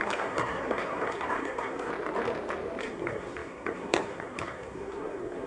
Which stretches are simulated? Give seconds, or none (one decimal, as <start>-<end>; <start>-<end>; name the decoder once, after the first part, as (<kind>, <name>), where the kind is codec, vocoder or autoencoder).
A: 0.0-1.9 (codec, SNAC); 2.8-5.5